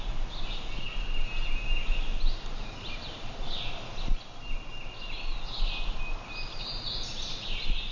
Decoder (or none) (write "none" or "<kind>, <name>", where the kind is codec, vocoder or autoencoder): none